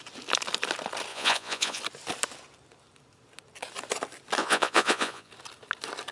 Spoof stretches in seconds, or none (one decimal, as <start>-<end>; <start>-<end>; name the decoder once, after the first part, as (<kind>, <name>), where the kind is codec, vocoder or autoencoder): 1.1-1.8 (vocoder, Vocos); 4.4-5.3